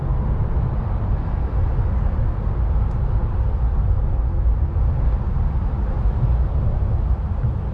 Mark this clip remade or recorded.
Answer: recorded